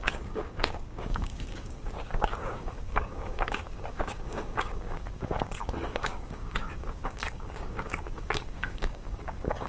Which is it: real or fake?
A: fake